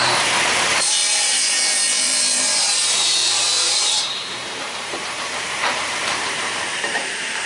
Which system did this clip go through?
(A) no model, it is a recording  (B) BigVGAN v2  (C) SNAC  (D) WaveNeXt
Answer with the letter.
B